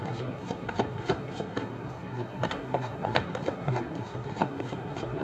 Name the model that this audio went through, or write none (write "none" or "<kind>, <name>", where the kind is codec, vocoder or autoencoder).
codec, SNAC